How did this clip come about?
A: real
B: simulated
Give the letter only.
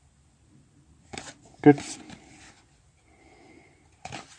A